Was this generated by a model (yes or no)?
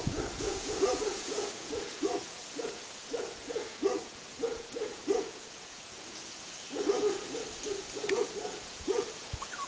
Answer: yes